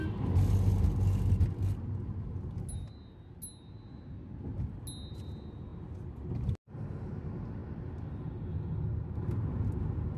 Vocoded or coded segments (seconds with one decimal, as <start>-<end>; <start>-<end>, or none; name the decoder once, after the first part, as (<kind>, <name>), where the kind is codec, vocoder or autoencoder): 7.6-8.5 (vocoder, BigVGAN v2)